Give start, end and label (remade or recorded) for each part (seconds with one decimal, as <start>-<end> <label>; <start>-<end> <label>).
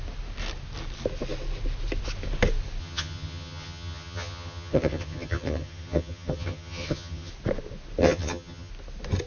0.0-2.8 recorded; 2.8-7.3 remade; 7.3-8.0 recorded; 8.0-8.7 remade; 8.7-9.3 recorded